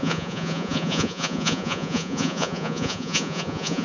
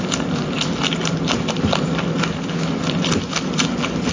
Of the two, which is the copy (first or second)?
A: first